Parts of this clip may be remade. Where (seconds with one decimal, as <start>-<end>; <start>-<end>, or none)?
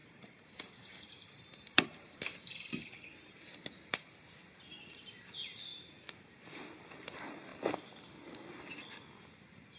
0.0-2.7; 5.7-6.4